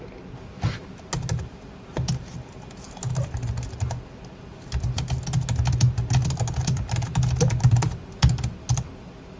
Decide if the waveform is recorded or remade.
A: recorded